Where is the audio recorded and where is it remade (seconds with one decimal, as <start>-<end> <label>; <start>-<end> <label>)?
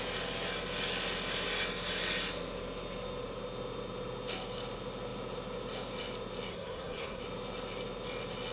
0.0-6.5 recorded; 6.5-7.2 remade; 7.2-8.5 recorded